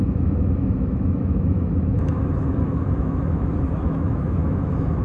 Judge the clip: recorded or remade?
remade